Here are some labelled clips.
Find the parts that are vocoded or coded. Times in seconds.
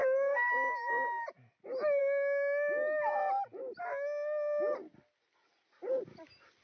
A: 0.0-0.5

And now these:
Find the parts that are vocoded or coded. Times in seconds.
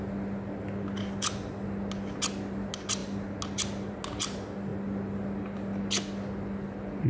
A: none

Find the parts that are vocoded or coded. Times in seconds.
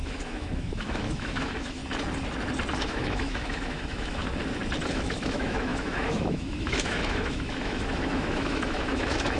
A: 0.0-1.8; 2.8-4.2; 4.9-9.4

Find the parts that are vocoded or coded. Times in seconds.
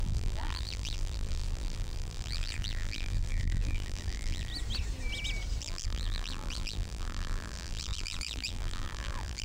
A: 0.0-4.5; 5.6-9.4